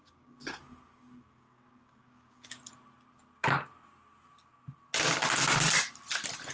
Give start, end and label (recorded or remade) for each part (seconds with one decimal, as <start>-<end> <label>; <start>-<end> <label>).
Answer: 0.0-2.6 remade; 2.6-6.5 recorded